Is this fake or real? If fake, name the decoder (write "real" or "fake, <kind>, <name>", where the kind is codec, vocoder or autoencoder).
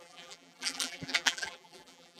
fake, vocoder, BigVGAN v2